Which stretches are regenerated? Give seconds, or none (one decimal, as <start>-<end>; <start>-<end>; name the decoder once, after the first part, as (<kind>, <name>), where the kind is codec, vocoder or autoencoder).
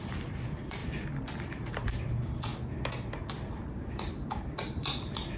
0.0-0.8 (vocoder, BigVGAN v2); 1.7-2.5; 3.2-5.4